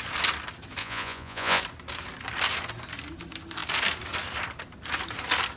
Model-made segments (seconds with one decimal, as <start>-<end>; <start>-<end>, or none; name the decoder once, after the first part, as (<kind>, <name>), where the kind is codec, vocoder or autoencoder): 0.8-1.6 (vocoder, Vocos)